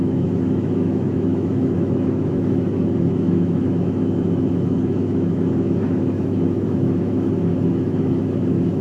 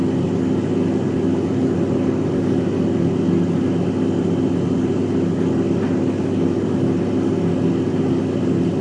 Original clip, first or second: second